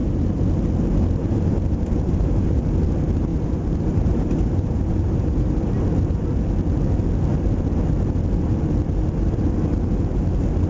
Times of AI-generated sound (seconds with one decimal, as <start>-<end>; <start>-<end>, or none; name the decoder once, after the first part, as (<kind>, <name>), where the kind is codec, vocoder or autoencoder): 0.0-0.7 (vocoder, BigVGAN v2); 1.2-2.6; 3.3-5.6

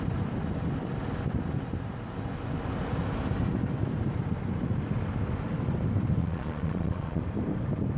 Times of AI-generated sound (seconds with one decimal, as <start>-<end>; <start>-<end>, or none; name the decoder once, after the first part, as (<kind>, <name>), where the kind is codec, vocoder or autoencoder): 6.2-7.2 (vocoder, Vocos)